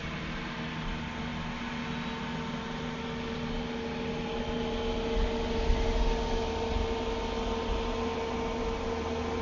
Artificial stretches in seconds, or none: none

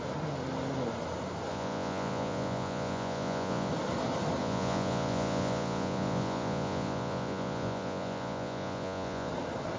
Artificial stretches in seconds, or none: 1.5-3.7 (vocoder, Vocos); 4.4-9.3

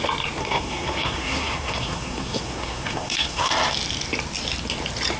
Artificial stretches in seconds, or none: 0.4-3.5 (codec, SNAC)

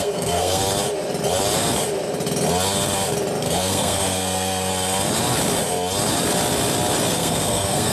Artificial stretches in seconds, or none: 0.0-0.6 (codec, SNAC); 3.4-4.7; 7.1-7.9

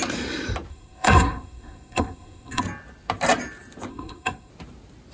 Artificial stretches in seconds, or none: 0.7-2.6 (codec, SNAC); 3.9-4.5

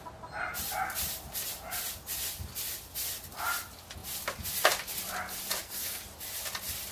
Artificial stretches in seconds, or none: 5.6-6.1 (codec, SNAC)

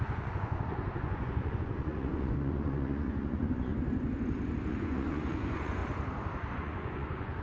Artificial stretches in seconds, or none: 0.0-3.7 (vocoder, Vocos); 4.7-5.8; 6.5-7.4

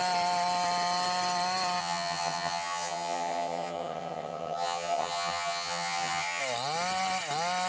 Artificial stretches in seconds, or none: 1.8-6.4 (vocoder, HiFi-GAN)